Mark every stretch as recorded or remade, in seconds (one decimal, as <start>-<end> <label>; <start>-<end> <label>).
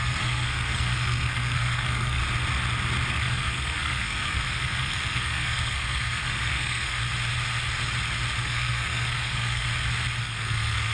0.0-2.2 remade; 2.2-3.1 recorded; 3.1-7.0 remade; 7.0-8.4 recorded; 8.4-9.7 remade; 9.7-10.2 recorded; 10.2-10.9 remade